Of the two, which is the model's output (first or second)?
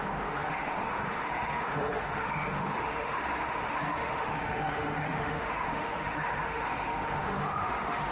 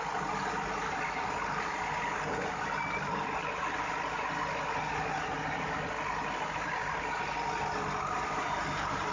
first